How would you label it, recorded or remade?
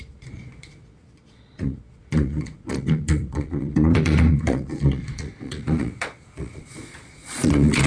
remade